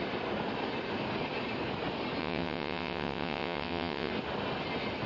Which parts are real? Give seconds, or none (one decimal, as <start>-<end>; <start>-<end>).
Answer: 0.0-2.2; 4.1-5.1